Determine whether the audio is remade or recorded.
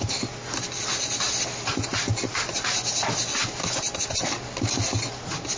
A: recorded